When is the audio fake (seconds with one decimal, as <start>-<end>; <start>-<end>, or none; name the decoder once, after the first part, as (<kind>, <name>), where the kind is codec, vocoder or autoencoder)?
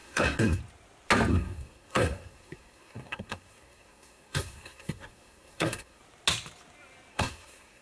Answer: 0.0-0.6 (codec, SNAC); 1.3-6.0; 7.1-7.8